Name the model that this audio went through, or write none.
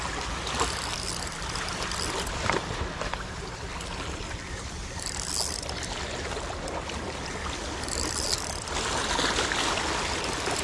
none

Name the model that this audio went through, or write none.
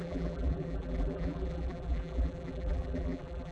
vocoder, BigVGAN v2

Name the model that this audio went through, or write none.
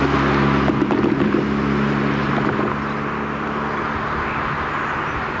none